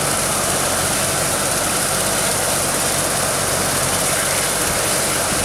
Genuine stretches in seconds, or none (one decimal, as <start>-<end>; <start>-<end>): 0.0-5.4